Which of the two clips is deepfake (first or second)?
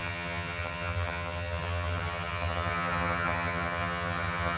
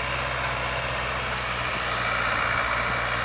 first